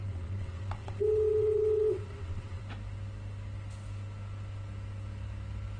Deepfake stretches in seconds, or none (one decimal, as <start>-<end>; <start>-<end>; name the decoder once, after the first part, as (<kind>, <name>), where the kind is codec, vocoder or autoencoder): 0.0-2.6 (vocoder, WaveNeXt)